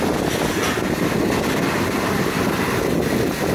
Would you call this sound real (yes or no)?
yes